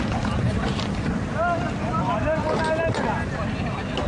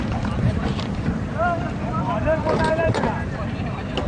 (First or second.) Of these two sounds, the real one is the first